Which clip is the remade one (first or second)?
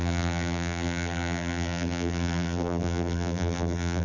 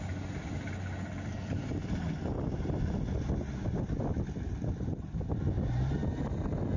first